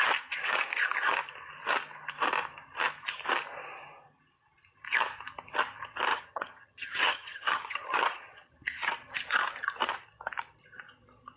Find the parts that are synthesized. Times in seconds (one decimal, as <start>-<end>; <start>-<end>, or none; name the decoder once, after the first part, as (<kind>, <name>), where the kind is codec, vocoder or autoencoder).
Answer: 6.1-8.5 (vocoder, HiFi-GAN)